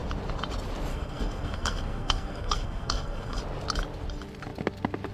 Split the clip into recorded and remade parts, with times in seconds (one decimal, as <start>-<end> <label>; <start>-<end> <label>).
0.0-0.9 recorded; 0.9-3.4 remade; 3.4-5.1 recorded